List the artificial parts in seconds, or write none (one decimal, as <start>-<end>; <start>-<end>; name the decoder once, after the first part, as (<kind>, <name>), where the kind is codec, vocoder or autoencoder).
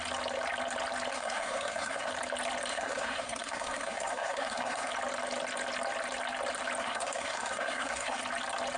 1.1-2.1 (codec, SNAC); 2.7-4.9; 6.8-8.2